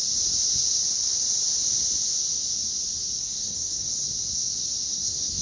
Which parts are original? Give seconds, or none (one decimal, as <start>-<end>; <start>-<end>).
0.0-3.2; 3.9-4.9